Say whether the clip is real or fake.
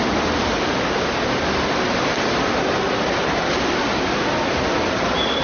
real